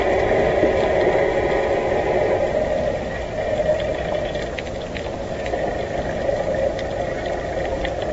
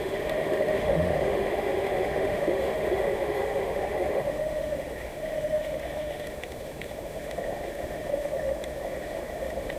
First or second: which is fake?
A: second